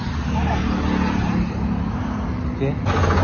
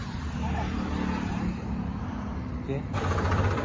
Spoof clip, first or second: second